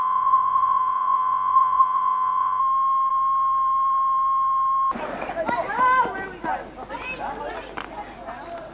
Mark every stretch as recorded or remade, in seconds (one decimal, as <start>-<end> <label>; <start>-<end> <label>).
0.0-2.6 remade; 2.6-8.7 recorded